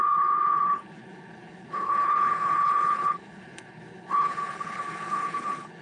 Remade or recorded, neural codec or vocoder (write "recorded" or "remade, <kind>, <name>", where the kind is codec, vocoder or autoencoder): remade, codec, HILCodec